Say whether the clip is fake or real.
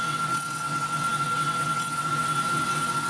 fake